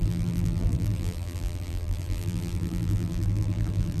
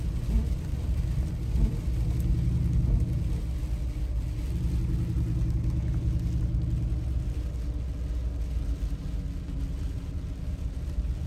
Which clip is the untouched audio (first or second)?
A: second